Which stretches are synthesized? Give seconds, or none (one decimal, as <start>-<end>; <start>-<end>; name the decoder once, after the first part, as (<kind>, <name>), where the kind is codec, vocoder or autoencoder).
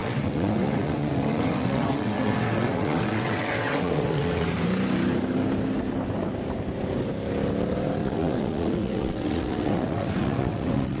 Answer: 0.0-4.5 (vocoder, WaveNeXt); 8.0-11.0